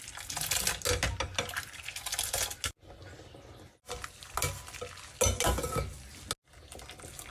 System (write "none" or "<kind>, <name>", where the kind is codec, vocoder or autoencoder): none